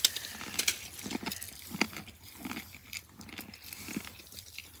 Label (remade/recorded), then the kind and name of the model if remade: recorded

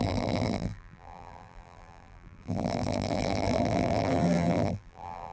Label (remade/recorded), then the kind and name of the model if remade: remade, vocoder, BigVGAN v2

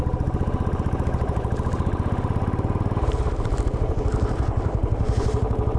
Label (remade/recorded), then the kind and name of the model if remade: remade, vocoder, BigVGAN v2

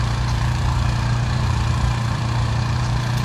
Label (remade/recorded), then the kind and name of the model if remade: remade, vocoder, BigVGAN v2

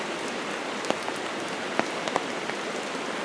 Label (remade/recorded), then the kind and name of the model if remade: recorded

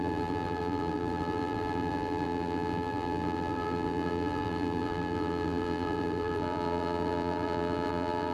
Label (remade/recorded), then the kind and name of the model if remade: remade, vocoder, BigVGAN v2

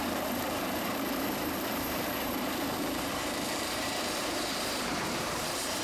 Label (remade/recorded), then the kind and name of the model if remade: remade, vocoder, BigVGAN v2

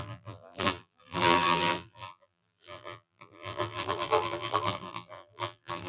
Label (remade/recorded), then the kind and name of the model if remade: remade, vocoder, BigVGAN v2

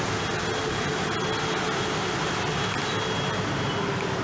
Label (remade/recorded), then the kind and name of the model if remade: recorded